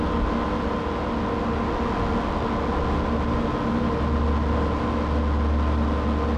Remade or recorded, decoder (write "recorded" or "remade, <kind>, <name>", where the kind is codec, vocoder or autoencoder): recorded